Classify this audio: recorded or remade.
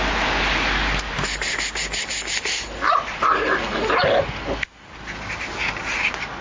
recorded